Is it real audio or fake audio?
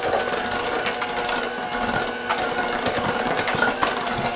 real